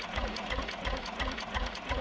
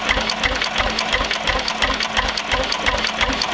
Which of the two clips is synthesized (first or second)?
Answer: first